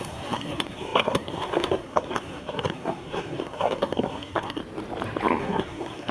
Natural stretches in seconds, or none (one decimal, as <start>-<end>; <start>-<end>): 4.6-5.4